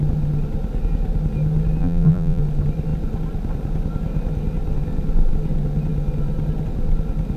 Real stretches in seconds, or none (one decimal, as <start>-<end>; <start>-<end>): 0.0-1.8; 2.4-7.4